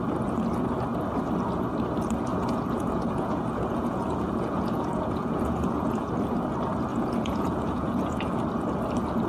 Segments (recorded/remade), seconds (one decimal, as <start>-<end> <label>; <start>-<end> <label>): 0.0-2.3 recorded; 2.3-6.1 remade; 6.1-6.9 recorded; 6.9-8.4 remade; 8.4-9.3 recorded